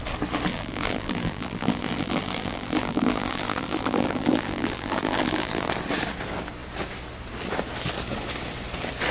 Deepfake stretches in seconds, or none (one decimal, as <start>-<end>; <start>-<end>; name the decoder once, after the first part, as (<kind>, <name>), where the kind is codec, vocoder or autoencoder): 0.5-5.7 (vocoder, BigVGAN v2)